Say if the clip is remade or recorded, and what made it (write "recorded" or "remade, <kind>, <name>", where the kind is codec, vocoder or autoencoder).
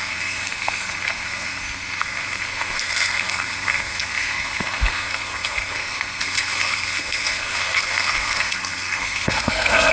remade, codec, SNAC